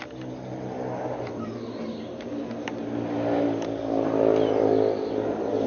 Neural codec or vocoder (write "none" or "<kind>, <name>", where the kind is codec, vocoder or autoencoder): none